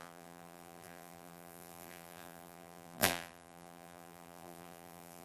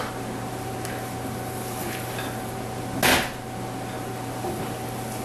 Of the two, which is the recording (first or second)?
second